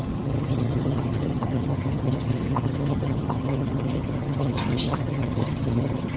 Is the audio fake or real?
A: fake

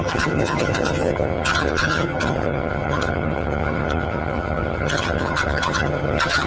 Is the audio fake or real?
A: fake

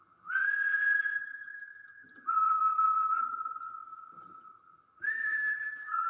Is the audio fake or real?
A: fake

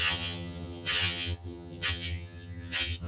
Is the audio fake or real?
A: fake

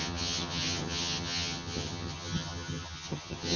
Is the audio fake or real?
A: fake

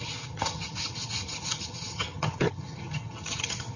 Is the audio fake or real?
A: fake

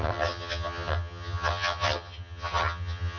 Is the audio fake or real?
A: fake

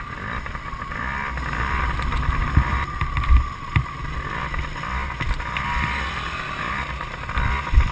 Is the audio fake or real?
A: real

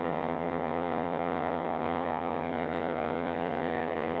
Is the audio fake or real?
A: fake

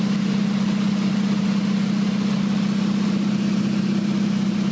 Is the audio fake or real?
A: real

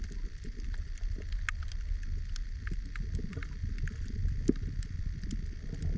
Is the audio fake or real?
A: real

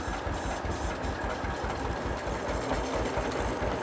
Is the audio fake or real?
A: real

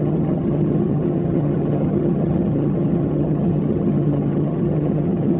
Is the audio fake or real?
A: fake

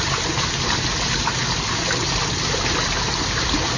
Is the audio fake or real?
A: real